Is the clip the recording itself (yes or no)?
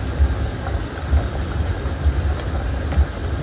yes